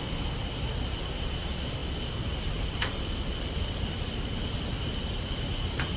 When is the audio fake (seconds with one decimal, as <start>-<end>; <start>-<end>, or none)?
none